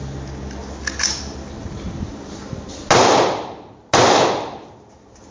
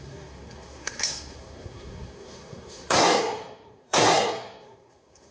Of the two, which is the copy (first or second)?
second